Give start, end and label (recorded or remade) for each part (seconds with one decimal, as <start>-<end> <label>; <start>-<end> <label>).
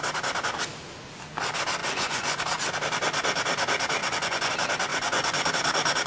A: 0.0-1.8 recorded; 1.8-2.4 remade; 2.4-4.0 recorded; 4.0-4.5 remade; 4.5-4.9 recorded; 4.9-5.5 remade; 5.5-6.1 recorded